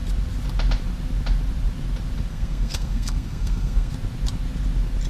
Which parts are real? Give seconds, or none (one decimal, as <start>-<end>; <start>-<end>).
0.0-2.3; 3.9-5.1